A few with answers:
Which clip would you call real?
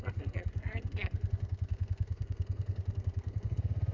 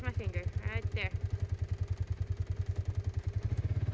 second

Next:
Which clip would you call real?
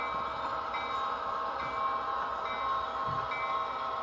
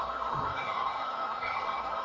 first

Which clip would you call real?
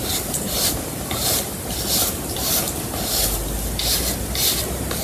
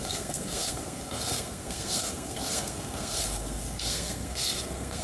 first